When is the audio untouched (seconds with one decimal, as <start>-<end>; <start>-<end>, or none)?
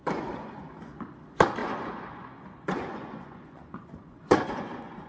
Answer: 1.0-1.6